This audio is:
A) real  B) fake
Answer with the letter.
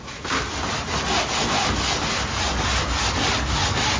A